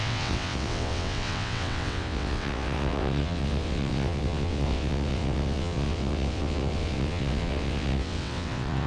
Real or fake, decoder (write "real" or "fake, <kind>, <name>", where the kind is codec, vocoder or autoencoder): fake, vocoder, WaveNeXt